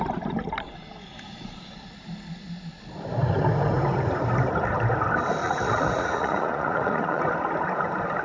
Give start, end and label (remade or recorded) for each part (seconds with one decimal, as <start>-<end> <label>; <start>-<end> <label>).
0.0-5.4 recorded; 5.4-7.2 remade; 7.2-8.2 recorded